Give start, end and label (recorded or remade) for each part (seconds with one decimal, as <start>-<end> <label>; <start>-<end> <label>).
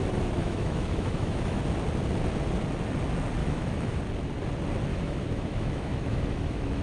0.0-0.4 recorded; 0.4-1.6 remade; 1.6-3.4 recorded; 3.4-4.0 remade; 4.0-4.9 recorded; 4.9-6.8 remade